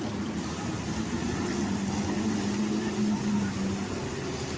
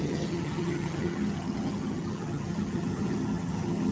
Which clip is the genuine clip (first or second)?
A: first